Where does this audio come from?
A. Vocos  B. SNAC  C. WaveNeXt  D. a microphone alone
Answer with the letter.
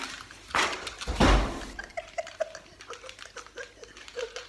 D